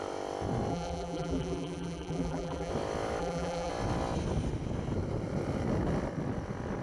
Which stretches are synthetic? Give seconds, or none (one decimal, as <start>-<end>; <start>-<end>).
0.7-2.7; 3.2-3.7